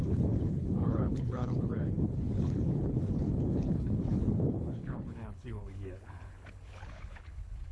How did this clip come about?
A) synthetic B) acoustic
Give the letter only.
A